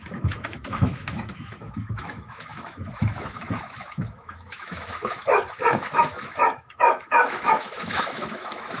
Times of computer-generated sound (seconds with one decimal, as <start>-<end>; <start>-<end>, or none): 0.0-8.8